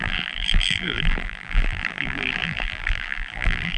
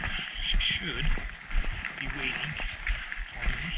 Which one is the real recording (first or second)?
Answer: second